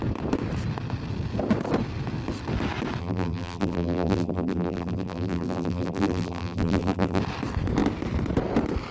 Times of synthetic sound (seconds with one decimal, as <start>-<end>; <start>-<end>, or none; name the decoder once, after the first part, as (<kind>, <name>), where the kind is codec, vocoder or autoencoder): 3.0-7.2 (vocoder, BigVGAN v2)